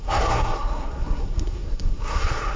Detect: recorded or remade remade